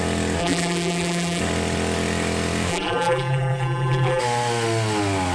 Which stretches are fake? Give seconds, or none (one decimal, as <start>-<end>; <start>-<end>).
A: 0.4-1.4; 2.7-4.2